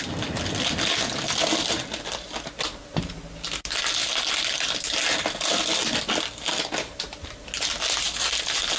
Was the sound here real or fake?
real